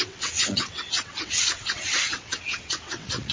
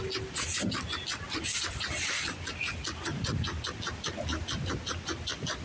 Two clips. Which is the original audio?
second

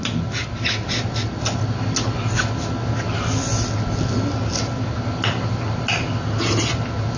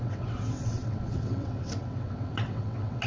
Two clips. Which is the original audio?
first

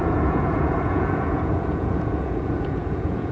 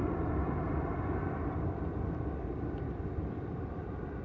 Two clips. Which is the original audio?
second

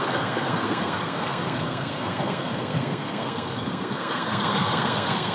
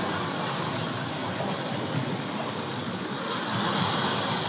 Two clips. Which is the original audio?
second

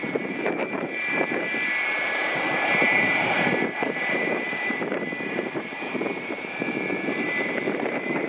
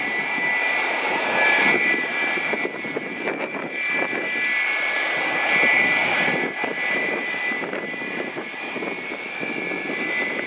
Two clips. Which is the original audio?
second